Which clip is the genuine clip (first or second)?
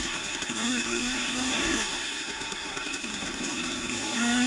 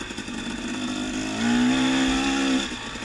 second